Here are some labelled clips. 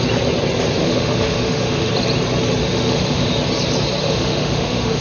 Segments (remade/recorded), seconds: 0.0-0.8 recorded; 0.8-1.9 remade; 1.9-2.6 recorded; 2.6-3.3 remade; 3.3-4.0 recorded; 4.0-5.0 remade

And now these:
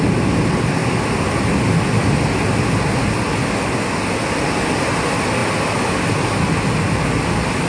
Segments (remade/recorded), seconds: 0.0-7.7 recorded

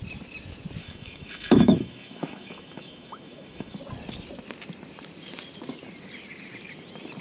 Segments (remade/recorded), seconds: 0.0-0.8 recorded; 0.8-3.8 remade; 3.8-7.2 recorded